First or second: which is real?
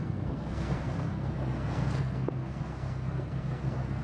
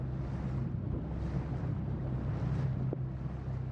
second